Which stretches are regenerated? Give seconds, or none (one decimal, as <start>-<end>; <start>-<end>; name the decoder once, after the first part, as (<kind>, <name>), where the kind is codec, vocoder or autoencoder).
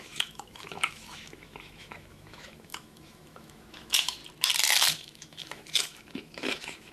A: 0.0-4.2 (autoencoder, DAC-VAE); 4.9-6.9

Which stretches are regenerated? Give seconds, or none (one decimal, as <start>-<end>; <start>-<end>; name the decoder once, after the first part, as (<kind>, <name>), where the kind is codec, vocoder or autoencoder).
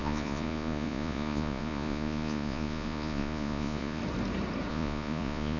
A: 0.0-4.0 (vocoder, Vocos); 4.7-5.6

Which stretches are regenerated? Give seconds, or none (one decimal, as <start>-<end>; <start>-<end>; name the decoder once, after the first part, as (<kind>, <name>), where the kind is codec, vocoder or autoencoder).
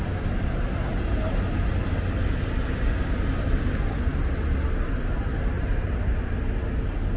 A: none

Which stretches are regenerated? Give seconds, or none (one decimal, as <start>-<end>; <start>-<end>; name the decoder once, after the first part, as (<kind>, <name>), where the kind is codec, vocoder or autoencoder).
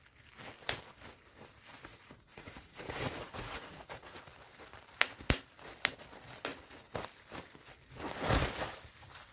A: 1.9-4.2 (vocoder, Vocos)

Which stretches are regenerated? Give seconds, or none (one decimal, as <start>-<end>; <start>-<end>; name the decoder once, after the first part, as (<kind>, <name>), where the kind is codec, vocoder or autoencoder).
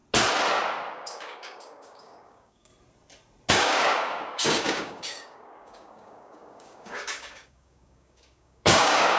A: 0.9-2.7 (codec, DAC); 3.5-9.2